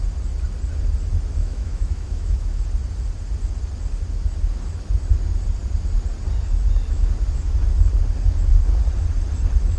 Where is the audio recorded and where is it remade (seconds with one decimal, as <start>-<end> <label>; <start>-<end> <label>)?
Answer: 0.0-1.4 recorded; 1.4-2.6 remade; 2.6-9.8 recorded